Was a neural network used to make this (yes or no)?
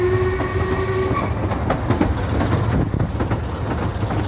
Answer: no